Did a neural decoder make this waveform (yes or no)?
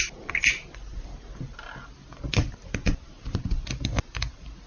no